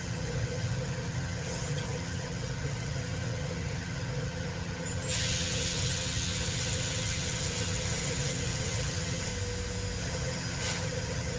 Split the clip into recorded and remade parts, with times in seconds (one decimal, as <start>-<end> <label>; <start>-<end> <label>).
0.0-9.3 remade; 9.3-10.0 recorded; 10.0-11.4 remade